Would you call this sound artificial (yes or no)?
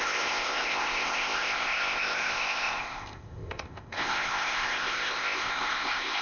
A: yes